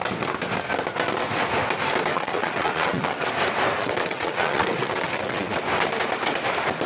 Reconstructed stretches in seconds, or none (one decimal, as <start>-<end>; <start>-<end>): 2.1-3.3; 3.8-5.6